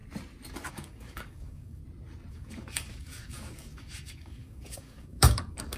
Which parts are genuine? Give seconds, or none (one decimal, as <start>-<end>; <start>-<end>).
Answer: 0.0-0.7; 1.8-2.3